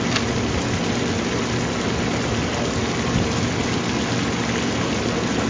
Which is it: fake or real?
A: real